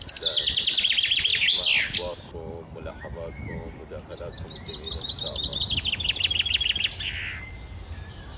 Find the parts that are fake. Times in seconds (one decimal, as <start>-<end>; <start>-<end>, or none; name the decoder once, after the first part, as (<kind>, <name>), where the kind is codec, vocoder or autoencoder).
1.3-2.9 (vocoder, BigVGAN v2)